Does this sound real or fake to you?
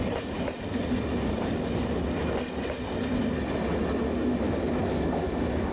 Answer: real